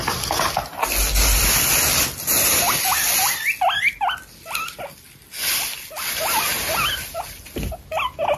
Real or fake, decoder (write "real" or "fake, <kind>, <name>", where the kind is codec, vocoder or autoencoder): real